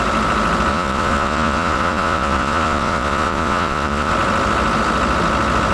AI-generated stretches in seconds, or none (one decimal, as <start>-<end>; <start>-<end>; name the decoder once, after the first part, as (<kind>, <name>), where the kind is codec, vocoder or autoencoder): 0.7-4.1 (vocoder, Vocos)